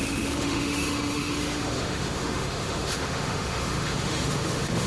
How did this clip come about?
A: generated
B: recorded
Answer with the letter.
A